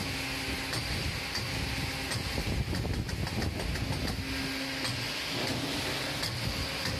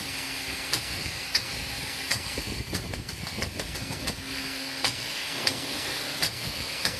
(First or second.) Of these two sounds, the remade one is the second